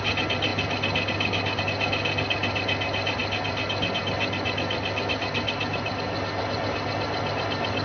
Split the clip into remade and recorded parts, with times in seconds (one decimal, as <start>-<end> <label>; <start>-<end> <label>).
0.0-7.8 recorded

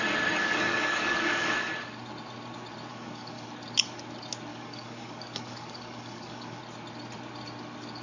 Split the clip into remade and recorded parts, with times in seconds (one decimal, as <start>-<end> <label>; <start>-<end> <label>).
0.0-0.4 recorded; 0.4-1.7 remade; 1.7-2.9 recorded; 2.9-3.5 remade; 3.5-4.5 recorded; 4.5-6.6 remade; 6.6-8.0 recorded

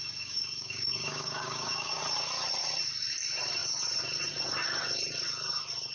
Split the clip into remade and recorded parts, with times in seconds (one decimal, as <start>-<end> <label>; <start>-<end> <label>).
0.0-2.0 remade; 2.0-5.9 recorded

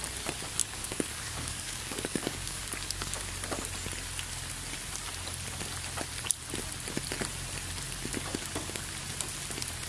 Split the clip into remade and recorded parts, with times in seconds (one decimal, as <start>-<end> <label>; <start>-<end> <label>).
0.0-0.6 recorded; 0.6-3.3 remade; 3.3-8.3 recorded; 8.3-8.9 remade; 8.9-9.9 recorded

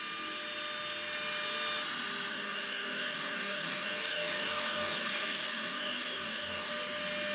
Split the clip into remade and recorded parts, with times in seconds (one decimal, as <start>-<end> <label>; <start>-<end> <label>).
0.0-2.3 recorded; 2.3-6.7 remade; 6.7-7.3 recorded